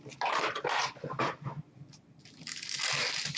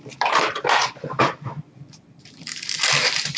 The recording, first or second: first